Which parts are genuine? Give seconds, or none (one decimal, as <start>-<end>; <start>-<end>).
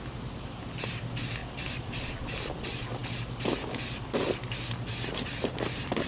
0.0-1.4; 2.0-4.9